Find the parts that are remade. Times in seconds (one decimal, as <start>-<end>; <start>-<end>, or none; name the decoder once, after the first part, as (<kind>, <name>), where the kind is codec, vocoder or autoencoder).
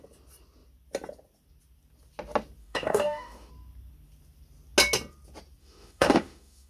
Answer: 2.6-3.5 (autoencoder, DAC-VAE); 5.6-6.7